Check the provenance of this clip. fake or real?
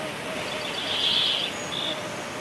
real